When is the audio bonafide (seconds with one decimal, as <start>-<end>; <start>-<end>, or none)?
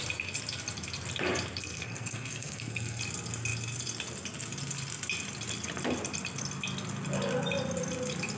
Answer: 0.0-1.6; 3.0-8.4